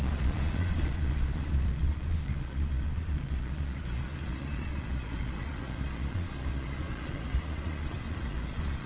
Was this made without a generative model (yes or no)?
no